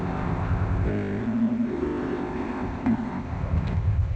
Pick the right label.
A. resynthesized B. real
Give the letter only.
A